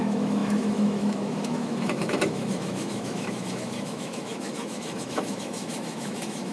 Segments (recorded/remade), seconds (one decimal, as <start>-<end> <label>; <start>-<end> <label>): 0.0-6.5 remade